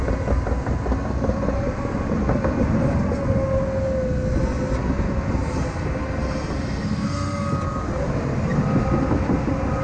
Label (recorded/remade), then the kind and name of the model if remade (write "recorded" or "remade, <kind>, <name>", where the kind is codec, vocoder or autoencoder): recorded